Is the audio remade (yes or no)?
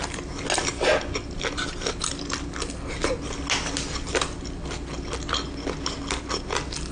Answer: no